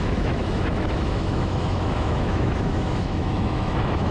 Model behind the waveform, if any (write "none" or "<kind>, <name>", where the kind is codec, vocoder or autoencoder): autoencoder, DAC-VAE